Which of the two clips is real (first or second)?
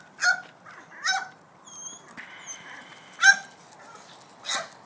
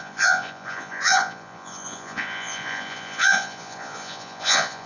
first